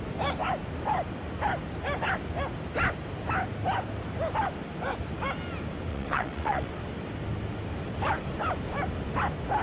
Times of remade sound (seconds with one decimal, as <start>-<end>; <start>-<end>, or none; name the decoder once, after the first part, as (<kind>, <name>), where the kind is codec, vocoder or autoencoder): 5.9-6.7 (vocoder, WaveNeXt)